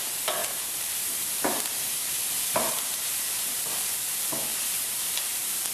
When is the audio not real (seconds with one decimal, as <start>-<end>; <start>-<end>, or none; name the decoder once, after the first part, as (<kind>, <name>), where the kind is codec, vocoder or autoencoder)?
0.4-3.8 (vocoder, BigVGAN v2); 4.5-5.7